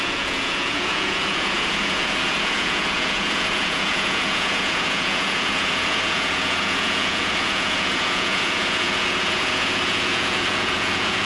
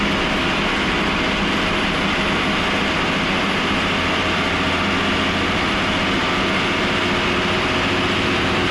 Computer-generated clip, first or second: first